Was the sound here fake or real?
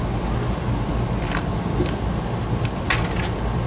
real